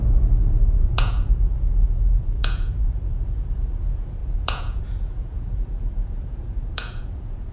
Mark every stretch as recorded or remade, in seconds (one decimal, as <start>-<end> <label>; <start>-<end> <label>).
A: 0.0-7.5 remade